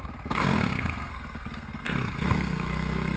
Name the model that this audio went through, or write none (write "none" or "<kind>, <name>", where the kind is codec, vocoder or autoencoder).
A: codec, SNAC